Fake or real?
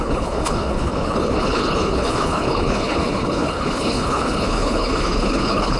fake